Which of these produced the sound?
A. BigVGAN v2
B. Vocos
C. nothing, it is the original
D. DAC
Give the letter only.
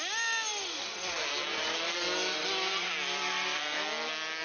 C